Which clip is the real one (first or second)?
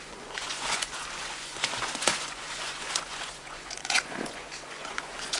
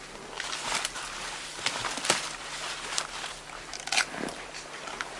second